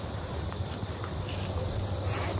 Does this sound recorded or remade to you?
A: recorded